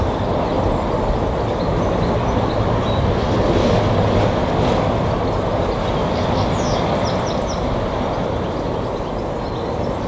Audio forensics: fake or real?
real